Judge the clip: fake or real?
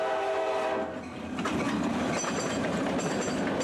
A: real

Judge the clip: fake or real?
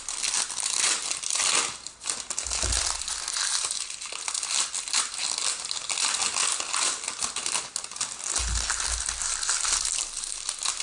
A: real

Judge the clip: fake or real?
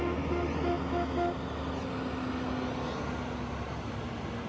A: real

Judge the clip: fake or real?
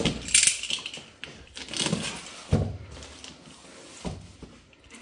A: real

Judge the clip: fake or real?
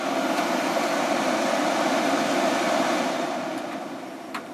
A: fake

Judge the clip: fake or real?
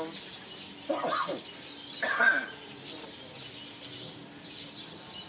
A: real